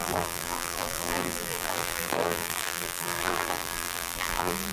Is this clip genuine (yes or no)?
no